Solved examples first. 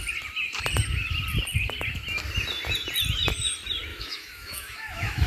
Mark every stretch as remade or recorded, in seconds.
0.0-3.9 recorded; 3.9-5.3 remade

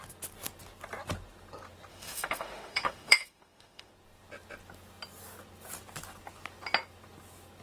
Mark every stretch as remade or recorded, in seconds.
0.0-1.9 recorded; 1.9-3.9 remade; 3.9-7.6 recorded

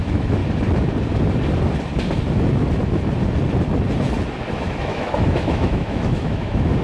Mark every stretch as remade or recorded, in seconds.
0.0-0.4 remade; 0.4-4.5 recorded; 4.5-6.8 remade

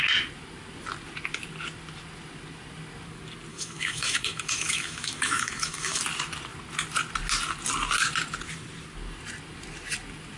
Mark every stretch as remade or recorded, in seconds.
0.0-3.5 recorded; 3.5-6.0 remade; 6.0-10.4 recorded

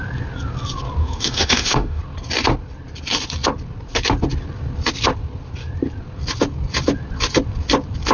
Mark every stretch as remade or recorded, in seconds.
0.0-1.0 recorded; 1.0-2.0 remade; 2.0-8.1 recorded

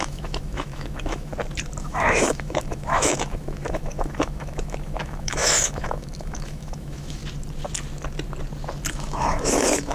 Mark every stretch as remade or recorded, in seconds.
0.0-1.3 remade; 1.3-1.8 recorded; 1.8-7.2 remade; 7.2-8.9 recorded; 8.9-9.9 remade